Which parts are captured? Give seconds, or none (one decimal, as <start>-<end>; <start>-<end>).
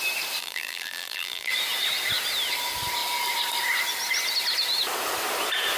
0.0-0.4; 1.5-5.8